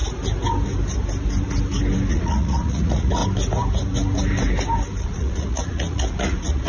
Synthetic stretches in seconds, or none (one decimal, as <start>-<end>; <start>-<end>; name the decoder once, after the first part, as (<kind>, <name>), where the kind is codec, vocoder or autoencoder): 2.1-3.2 (vocoder, Vocos); 5.0-6.7